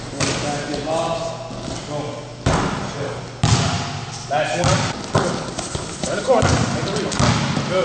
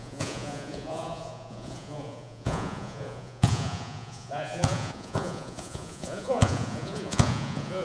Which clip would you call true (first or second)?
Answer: first